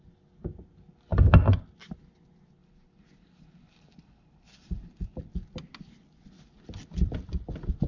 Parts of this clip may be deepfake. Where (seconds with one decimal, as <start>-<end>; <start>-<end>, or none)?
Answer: 2.6-5.2